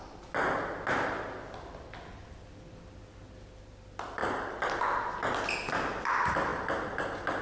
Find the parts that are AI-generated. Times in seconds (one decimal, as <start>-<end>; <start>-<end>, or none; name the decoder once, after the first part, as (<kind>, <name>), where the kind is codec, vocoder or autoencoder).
none